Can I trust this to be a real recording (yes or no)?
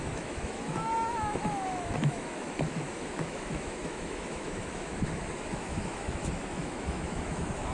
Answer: no